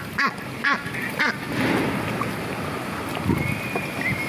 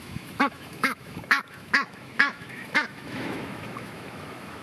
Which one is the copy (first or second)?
second